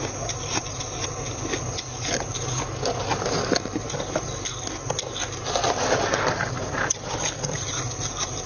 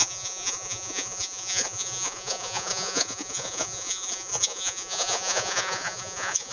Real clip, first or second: first